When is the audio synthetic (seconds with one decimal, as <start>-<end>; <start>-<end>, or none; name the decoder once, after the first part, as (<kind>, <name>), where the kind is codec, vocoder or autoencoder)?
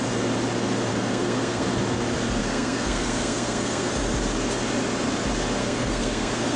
0.9-1.7 (codec, SNAC); 2.4-3.9; 5.6-6.6